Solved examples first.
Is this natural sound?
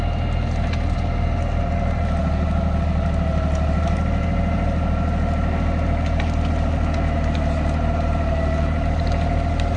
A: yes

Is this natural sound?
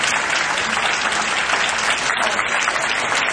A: yes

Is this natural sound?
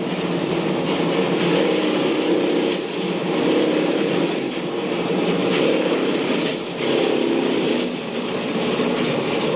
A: yes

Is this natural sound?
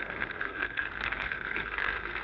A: no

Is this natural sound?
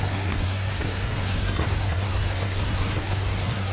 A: no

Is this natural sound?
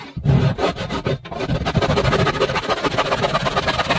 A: yes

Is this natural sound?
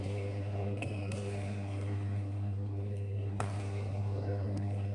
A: no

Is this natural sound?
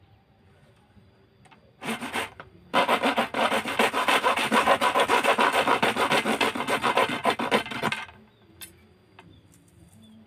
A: yes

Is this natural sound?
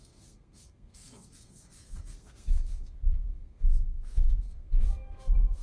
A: no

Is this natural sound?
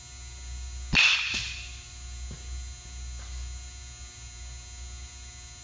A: yes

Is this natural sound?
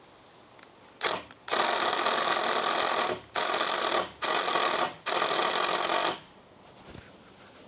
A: yes